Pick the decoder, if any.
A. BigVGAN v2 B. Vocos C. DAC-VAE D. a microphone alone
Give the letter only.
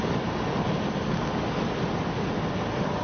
D